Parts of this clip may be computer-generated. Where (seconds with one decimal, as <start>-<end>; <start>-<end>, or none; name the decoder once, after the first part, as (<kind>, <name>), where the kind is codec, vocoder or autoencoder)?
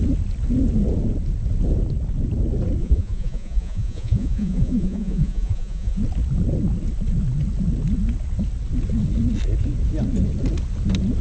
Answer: 2.8-6.0 (vocoder, Vocos)